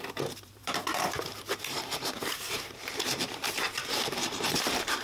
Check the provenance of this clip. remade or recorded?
remade